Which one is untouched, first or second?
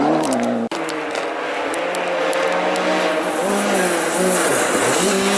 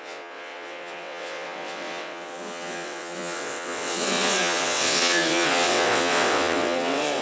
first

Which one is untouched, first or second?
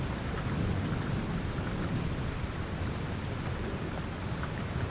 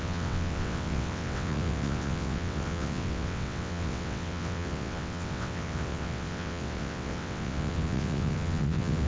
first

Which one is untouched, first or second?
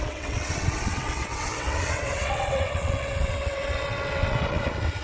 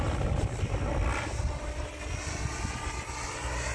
second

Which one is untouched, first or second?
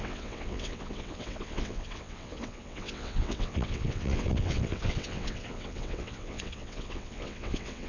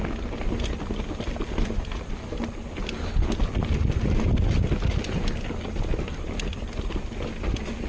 second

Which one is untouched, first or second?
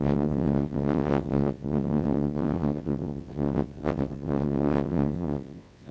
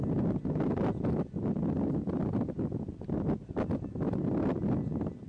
second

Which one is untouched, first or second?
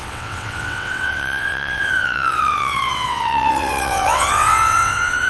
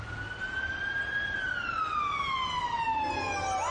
second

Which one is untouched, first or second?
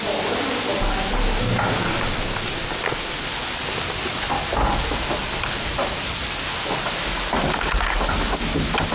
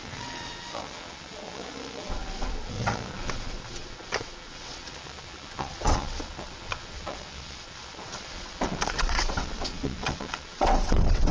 first